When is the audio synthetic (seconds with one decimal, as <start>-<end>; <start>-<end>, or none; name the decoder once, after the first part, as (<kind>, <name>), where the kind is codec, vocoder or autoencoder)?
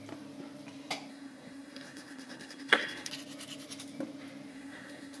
1.1-3.1 (codec, SNAC); 4.5-5.2